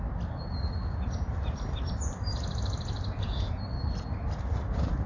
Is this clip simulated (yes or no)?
no